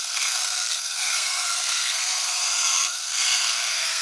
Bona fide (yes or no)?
no